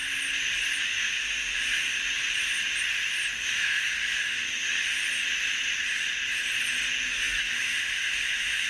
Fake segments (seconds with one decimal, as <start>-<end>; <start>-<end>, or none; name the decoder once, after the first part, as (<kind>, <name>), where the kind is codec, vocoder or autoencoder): 0.8-2.0 (autoencoder, DAC-VAE); 3.4-5.0; 7.1-8.7